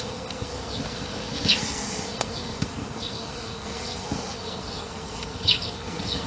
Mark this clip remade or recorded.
remade